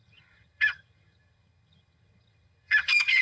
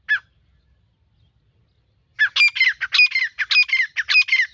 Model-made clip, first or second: first